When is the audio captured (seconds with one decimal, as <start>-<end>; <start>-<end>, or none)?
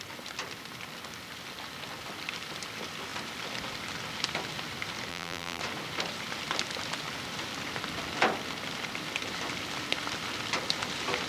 0.0-5.1; 5.6-11.3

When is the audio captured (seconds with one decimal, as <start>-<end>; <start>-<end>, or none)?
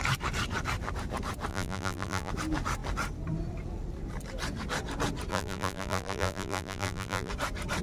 0.0-1.5; 2.3-5.3; 7.3-7.8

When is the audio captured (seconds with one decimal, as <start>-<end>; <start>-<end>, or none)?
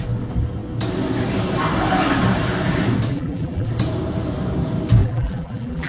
0.0-3.1; 3.7-5.0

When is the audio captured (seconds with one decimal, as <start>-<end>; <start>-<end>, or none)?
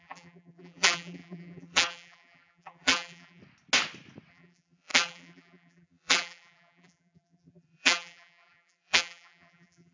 3.4-4.3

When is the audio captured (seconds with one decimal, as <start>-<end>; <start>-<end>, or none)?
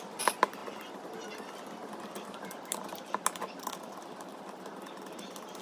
0.0-5.6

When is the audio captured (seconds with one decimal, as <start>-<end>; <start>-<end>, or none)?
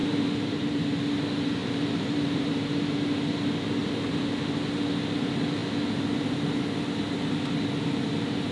1.0-1.6; 2.6-3.8; 4.6-8.5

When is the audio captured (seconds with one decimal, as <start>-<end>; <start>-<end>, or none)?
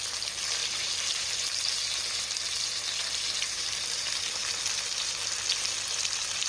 0.0-0.6; 4.5-6.5